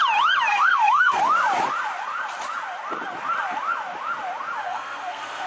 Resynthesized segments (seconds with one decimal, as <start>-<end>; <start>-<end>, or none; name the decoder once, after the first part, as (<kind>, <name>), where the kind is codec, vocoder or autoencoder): 0.5-1.2 (codec, SNAC); 4.6-5.5